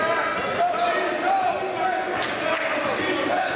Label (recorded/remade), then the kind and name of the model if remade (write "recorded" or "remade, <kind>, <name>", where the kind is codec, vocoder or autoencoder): recorded